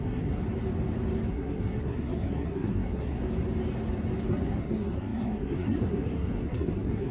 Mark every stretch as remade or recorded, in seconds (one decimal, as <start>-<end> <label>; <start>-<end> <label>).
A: 0.0-0.4 remade; 0.4-1.3 recorded; 1.3-3.2 remade; 3.2-4.3 recorded; 4.3-7.1 remade